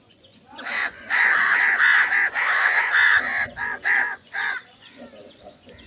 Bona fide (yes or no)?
no